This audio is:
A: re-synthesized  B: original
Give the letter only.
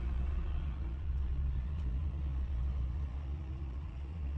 A